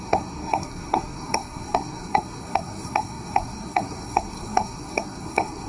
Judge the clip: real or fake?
fake